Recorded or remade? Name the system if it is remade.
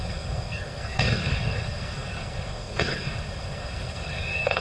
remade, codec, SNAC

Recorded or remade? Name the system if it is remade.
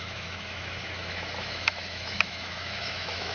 remade, autoencoder, DAC-VAE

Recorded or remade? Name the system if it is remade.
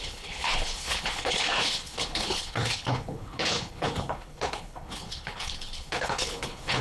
remade, codec, HILCodec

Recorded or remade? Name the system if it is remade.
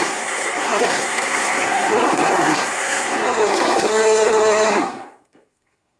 remade, codec, SNAC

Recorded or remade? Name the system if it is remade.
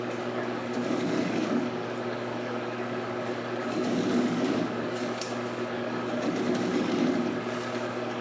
remade, codec, DAC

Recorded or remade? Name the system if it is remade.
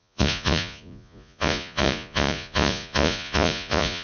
remade, vocoder, Vocos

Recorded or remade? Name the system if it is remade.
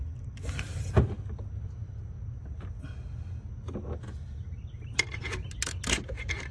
recorded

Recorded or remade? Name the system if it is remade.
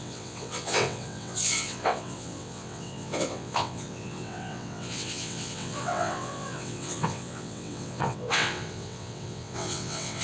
remade, vocoder, WaveNeXt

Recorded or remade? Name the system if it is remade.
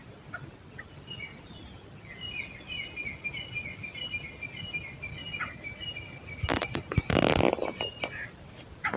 recorded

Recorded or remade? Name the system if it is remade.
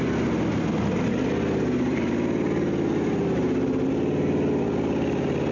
recorded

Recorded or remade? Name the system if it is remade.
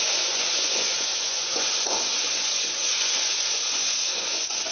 remade, vocoder, Vocos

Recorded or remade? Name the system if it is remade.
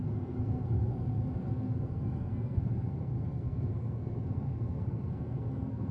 remade, codec, SNAC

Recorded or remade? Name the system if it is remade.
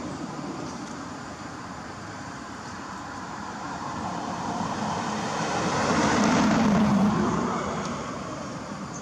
remade, vocoder, BigVGAN v2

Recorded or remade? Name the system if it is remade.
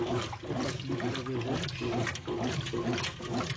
recorded